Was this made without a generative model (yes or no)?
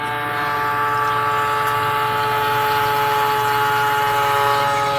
yes